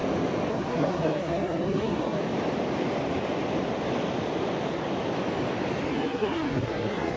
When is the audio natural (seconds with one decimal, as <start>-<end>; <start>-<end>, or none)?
0.0-0.5; 2.2-5.9